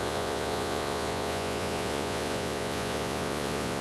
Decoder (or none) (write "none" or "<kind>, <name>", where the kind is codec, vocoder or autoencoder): vocoder, Vocos